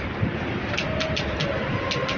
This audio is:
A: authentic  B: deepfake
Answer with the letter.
A